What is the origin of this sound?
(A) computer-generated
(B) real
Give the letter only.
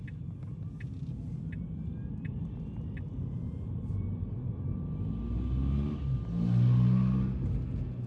B